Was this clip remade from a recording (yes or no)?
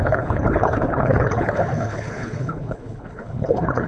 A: yes